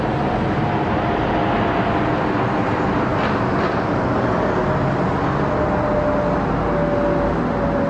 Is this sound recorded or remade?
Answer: recorded